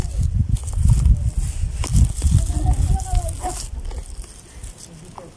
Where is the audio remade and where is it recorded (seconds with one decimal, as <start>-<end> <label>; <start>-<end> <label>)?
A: 0.0-5.4 recorded